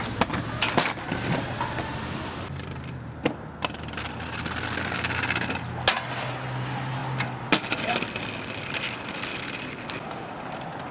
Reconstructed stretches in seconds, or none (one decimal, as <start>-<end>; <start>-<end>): none

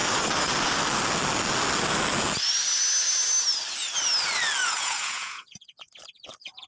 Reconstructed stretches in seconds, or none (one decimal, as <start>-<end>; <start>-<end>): 4.6-5.9

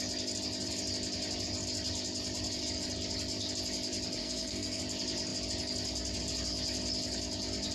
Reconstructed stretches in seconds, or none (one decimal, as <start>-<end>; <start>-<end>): 4.2-4.8

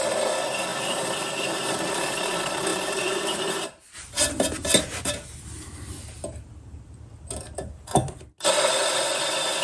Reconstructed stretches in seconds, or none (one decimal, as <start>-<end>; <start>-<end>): 0.7-2.2; 2.7-3.9